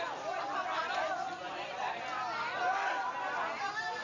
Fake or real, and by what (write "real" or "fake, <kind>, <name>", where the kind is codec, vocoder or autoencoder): real